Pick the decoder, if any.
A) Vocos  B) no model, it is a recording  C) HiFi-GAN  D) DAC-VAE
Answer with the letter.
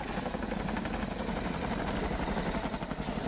B